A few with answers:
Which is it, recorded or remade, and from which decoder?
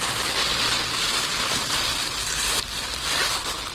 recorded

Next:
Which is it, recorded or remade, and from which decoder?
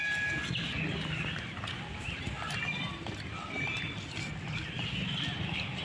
recorded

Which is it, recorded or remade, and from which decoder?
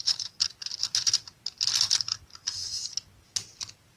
recorded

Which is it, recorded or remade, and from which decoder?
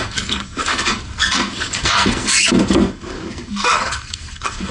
remade, codec, SNAC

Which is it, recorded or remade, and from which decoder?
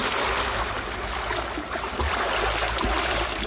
recorded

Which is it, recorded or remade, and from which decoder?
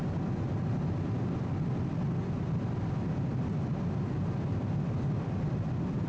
recorded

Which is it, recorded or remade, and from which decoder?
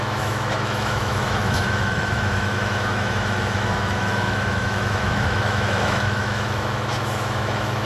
remade, autoencoder, DAC-VAE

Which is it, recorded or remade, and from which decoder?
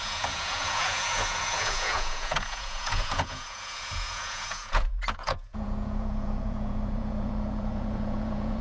remade, vocoder, Vocos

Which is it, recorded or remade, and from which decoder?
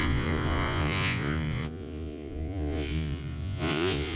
remade, vocoder, Vocos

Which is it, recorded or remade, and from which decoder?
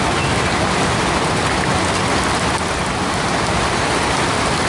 recorded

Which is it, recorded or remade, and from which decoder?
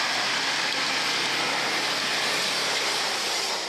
recorded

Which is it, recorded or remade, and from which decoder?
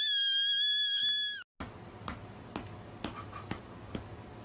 recorded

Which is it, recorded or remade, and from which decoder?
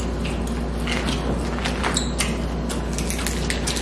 recorded